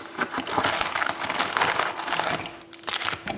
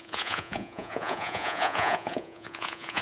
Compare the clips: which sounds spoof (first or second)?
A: second